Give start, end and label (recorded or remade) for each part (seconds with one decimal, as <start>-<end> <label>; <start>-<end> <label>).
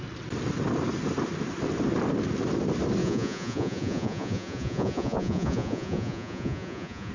0.0-3.0 recorded; 3.0-7.1 remade